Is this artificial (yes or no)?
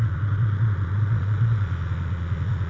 yes